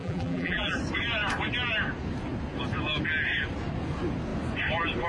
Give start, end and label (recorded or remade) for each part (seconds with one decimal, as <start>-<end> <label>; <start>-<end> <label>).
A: 0.0-0.7 remade; 0.7-5.1 recorded